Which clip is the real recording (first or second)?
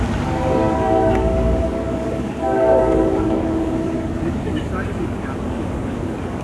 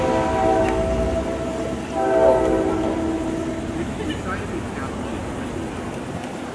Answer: second